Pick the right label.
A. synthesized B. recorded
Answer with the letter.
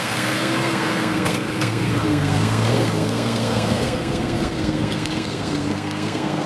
A